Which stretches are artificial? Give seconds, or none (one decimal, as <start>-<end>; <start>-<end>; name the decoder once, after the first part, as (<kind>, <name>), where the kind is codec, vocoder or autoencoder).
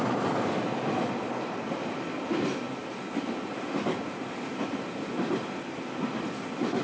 none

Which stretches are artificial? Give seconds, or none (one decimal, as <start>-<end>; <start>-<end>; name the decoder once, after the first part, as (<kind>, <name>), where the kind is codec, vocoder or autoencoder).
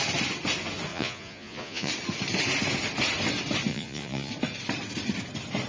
0.9-1.9 (vocoder, Vocos); 3.7-4.3